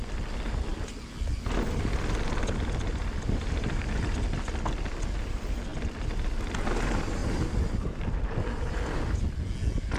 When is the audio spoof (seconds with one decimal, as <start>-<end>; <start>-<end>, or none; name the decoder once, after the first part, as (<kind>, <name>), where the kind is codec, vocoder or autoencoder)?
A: none

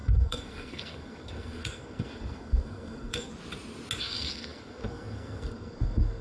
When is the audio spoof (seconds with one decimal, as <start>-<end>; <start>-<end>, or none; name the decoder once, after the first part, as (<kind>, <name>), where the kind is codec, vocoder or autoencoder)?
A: 0.0-3.3 (codec, SNAC); 4.0-6.2

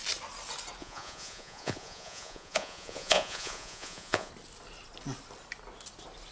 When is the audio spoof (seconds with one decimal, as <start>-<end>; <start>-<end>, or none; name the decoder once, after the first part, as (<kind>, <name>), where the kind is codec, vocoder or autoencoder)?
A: 0.8-4.3 (vocoder, Vocos)

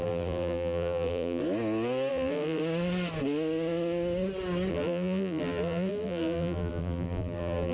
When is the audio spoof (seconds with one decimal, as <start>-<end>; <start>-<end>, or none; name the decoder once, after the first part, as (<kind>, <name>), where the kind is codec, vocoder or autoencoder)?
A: 0.0-1.4 (vocoder, BigVGAN v2); 2.1-2.6; 4.7-7.7

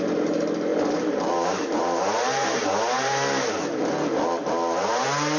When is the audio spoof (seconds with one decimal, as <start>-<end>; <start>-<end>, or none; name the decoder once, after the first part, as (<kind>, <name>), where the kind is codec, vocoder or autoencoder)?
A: 0.7-3.9 (vocoder, BigVGAN v2)

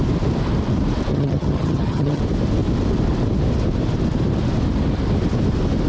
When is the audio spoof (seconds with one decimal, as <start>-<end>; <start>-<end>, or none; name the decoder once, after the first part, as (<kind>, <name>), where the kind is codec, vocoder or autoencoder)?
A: 1.1-2.2 (vocoder, HiFi-GAN)